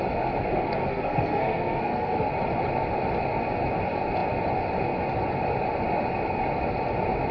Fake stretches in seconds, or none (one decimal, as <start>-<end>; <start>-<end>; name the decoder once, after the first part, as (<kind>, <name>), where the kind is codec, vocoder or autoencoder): 0.4-2.3 (codec, SNAC)